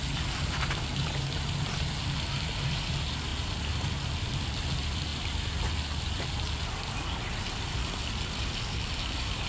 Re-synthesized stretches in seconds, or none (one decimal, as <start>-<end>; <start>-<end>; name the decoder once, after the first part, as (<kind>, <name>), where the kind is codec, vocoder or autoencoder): none